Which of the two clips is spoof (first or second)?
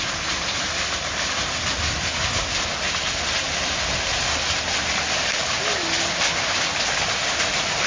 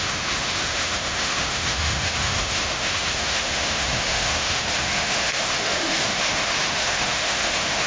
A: second